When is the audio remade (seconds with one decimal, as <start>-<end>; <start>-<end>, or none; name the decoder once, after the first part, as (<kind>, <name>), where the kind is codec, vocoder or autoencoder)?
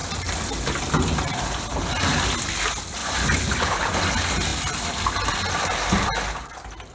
3.0-3.8 (vocoder, Vocos)